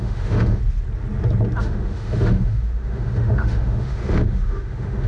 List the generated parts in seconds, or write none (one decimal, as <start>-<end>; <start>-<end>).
0.0-0.6; 1.6-5.1